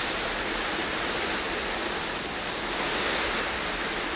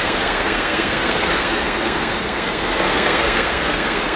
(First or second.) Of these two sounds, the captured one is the first